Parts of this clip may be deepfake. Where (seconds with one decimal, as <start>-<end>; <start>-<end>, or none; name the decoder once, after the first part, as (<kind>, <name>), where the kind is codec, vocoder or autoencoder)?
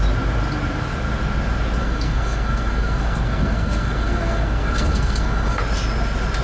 1.8-5.6 (codec, SNAC)